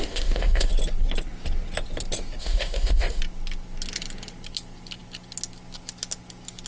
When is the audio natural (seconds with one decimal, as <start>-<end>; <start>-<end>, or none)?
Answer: 0.7-2.4; 3.2-6.7